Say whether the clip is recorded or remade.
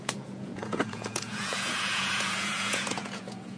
remade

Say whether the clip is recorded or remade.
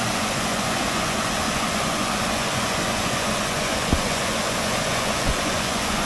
remade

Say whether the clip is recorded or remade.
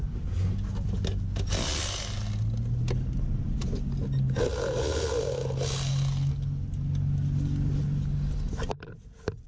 recorded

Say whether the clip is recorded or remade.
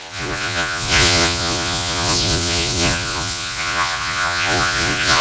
remade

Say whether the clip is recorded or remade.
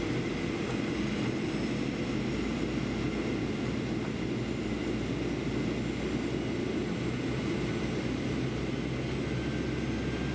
recorded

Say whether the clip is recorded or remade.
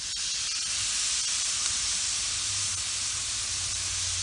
recorded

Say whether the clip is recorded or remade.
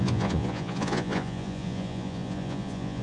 remade